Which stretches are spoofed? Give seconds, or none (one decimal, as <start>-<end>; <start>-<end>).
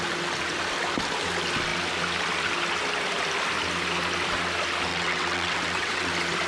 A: 4.9-6.1